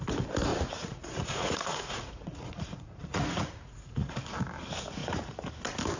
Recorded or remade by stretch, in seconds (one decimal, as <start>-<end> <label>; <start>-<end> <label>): 0.0-0.5 recorded; 0.5-4.1 remade; 4.1-5.0 recorded; 5.0-5.5 remade; 5.5-6.0 recorded